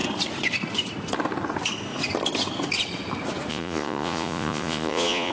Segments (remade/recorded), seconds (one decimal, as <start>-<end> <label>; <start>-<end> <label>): 0.0-3.5 recorded; 3.5-5.3 remade